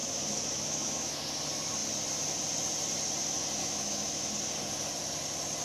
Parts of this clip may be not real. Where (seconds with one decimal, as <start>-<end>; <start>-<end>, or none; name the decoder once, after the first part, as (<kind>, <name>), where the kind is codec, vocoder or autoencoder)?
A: 0.0-1.2 (autoencoder, DAC-VAE); 3.6-4.3